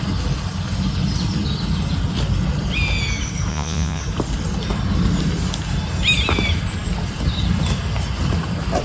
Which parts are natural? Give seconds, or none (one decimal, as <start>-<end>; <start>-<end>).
0.0-3.5; 4.0-8.8